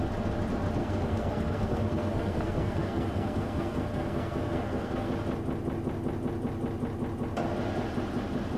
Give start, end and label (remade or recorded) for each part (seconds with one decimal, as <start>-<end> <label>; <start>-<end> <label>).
0.0-0.8 recorded; 0.8-5.1 remade; 5.1-8.6 recorded